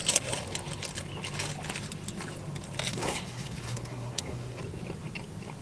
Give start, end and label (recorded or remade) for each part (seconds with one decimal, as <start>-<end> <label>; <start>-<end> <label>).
0.0-2.9 recorded; 2.9-4.6 remade; 4.6-5.6 recorded